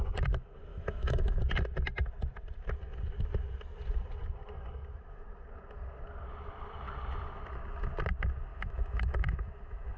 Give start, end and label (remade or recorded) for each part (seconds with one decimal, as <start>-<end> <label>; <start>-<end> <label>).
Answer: 0.0-0.7 recorded; 0.7-1.4 remade; 1.4-8.5 recorded; 8.5-10.0 remade